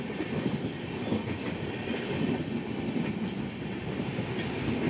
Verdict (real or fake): fake